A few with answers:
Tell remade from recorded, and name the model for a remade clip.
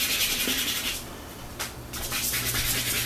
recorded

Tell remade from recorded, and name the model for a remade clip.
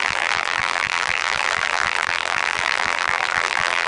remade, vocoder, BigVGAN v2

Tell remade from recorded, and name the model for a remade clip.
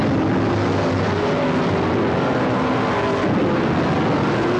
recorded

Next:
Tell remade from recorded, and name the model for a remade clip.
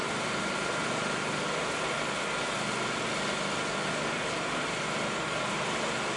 recorded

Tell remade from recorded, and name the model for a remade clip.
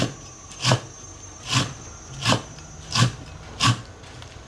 recorded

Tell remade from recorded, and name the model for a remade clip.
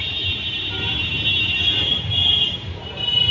remade, vocoder, BigVGAN v2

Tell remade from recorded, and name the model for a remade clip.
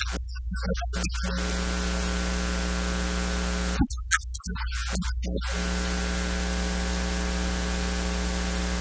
recorded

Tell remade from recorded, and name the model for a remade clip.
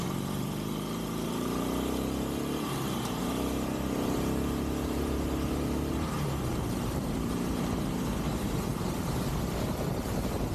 remade, vocoder, BigVGAN v2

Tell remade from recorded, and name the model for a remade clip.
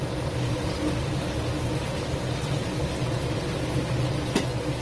recorded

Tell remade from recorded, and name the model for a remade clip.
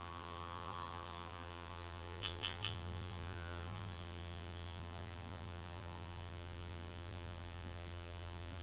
remade, vocoder, BigVGAN v2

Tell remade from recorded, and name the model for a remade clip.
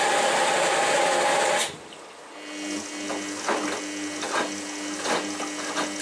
recorded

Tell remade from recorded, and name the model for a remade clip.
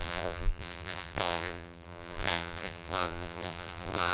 remade, vocoder, BigVGAN v2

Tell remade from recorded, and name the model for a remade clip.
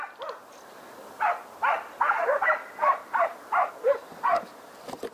recorded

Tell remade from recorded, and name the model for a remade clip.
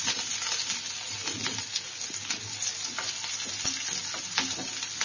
recorded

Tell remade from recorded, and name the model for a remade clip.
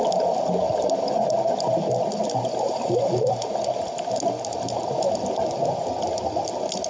recorded